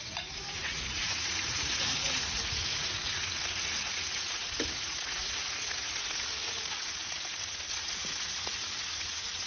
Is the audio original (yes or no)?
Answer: no